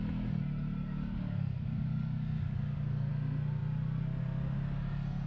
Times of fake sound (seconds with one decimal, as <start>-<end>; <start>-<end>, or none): 0.8-3.1